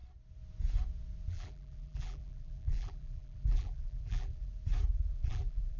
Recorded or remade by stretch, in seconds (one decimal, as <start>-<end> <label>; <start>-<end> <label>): 0.0-1.3 recorded; 1.3-4.5 remade; 4.5-5.1 recorded; 5.1-5.8 remade